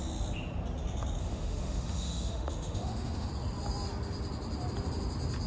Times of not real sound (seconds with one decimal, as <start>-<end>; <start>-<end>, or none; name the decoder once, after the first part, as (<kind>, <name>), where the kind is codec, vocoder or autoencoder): 1.2-3.3 (autoencoder, DAC-VAE)